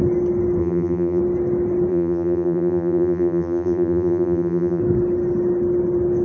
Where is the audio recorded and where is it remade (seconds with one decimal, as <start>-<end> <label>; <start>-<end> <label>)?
0.0-0.6 recorded; 0.6-1.2 remade; 1.2-1.9 recorded; 1.9-4.8 remade; 4.8-6.2 recorded